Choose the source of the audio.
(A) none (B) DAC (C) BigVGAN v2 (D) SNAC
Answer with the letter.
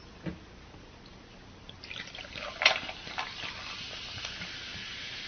A